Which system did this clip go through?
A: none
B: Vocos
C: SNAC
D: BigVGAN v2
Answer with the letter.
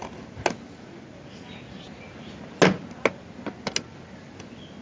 A